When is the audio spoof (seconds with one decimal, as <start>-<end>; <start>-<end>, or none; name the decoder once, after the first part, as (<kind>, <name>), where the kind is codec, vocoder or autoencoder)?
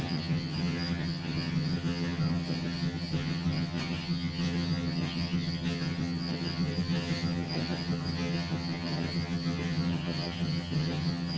0.0-11.4 (vocoder, HiFi-GAN)